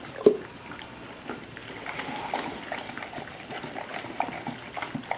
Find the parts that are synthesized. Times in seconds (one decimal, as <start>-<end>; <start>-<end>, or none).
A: none